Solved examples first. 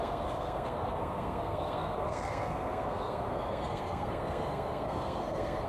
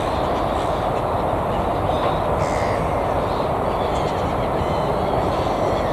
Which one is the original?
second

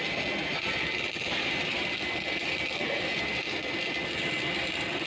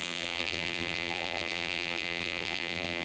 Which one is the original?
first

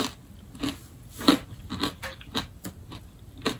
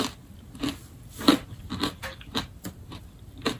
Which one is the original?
first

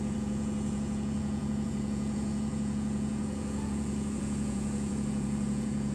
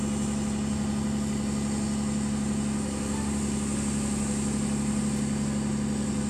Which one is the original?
second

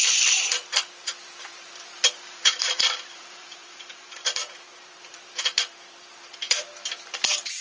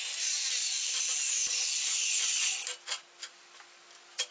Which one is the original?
second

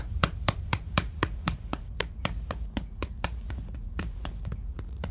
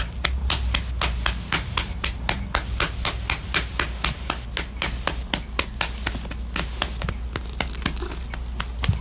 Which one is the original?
second